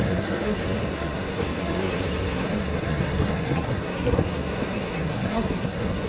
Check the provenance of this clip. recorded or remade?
remade